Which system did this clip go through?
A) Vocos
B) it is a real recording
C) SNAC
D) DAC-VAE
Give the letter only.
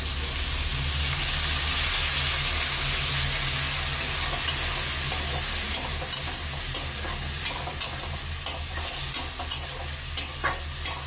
B